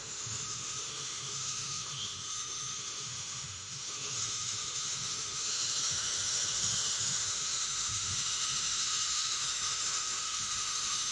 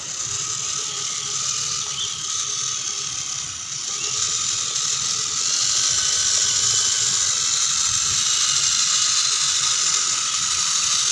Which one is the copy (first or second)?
first